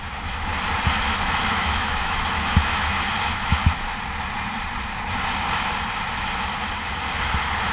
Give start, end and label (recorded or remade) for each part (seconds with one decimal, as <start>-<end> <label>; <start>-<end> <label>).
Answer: 0.0-0.5 remade; 0.5-1.5 recorded; 1.5-3.6 remade; 3.6-7.7 recorded